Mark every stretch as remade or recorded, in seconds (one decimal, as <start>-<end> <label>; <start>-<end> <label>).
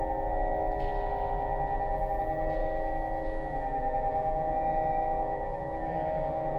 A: 0.0-2.6 recorded; 2.6-6.6 remade